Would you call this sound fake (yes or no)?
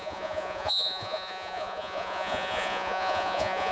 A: yes